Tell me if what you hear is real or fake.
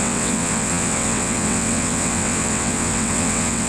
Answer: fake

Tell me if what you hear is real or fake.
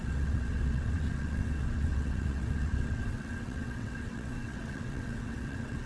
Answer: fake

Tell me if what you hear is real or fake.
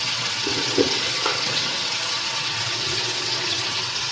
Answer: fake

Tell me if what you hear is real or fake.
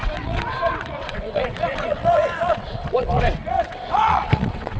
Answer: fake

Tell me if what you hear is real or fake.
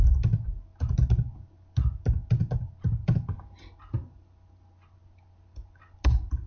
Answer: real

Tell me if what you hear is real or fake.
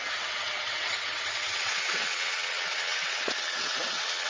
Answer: fake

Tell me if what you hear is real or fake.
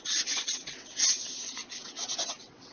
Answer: fake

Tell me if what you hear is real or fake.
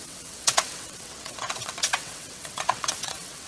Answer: fake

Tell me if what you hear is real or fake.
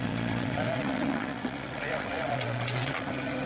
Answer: fake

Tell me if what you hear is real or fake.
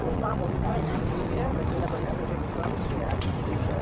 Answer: fake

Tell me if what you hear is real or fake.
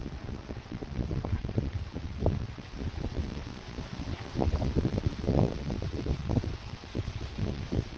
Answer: fake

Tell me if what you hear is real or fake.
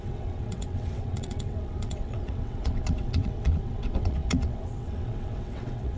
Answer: fake